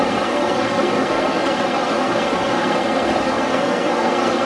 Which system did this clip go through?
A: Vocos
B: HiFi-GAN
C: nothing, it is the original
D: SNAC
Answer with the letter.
D